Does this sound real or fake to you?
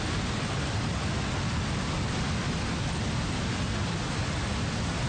real